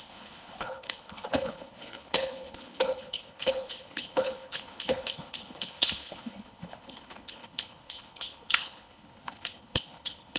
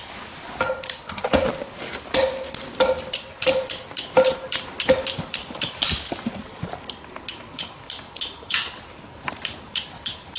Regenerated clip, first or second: first